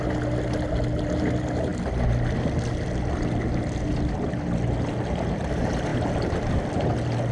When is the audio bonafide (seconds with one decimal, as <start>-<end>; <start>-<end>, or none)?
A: 0.0-7.3